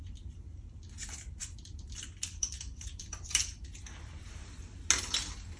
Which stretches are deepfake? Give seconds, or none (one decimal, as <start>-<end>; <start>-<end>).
1.4-4.8